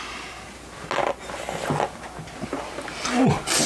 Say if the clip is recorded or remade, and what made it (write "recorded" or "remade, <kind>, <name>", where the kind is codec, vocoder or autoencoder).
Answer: recorded